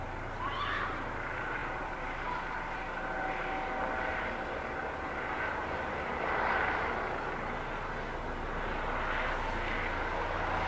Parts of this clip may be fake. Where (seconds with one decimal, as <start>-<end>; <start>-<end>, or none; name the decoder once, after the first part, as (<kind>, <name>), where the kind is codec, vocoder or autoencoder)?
1.6-3.3 (vocoder, BigVGAN v2)